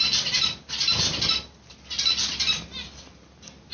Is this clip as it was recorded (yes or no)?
yes